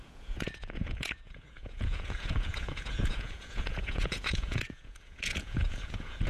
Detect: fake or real fake